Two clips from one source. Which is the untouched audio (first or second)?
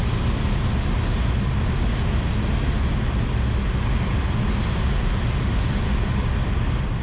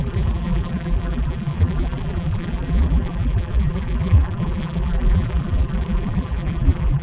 first